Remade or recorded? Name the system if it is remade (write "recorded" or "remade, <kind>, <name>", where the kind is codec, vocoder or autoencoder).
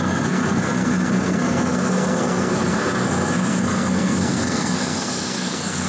remade, codec, SNAC